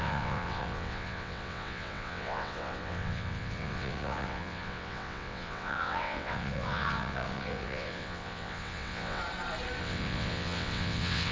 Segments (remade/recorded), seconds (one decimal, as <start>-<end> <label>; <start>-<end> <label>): 0.0-9.2 remade; 9.2-9.8 recorded; 9.8-11.3 remade